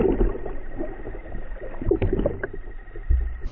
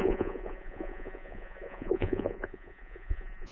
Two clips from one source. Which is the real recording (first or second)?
first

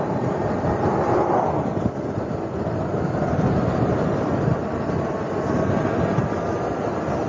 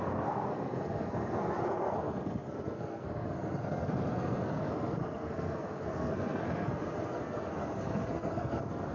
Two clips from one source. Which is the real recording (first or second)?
first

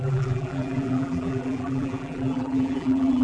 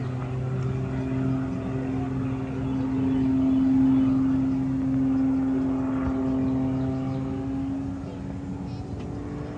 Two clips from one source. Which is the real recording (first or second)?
second